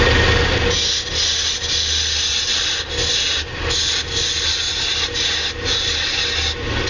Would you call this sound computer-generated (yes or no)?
no